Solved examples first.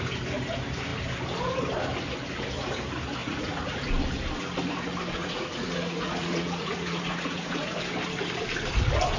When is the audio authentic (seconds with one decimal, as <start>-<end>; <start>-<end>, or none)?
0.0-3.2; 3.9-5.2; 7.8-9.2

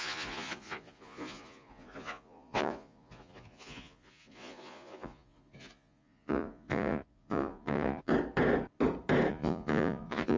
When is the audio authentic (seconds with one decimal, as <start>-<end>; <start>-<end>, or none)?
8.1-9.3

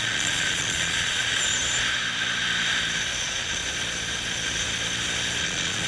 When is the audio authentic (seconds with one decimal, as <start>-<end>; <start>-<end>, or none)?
1.5-3.2; 3.6-5.4

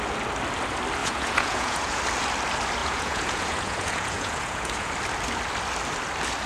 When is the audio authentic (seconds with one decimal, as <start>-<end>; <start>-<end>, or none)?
0.0-1.0; 2.0-2.8; 4.9-6.5